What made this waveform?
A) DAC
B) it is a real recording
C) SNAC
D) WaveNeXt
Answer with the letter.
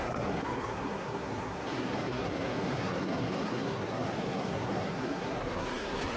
C